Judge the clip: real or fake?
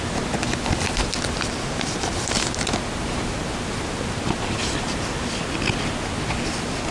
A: real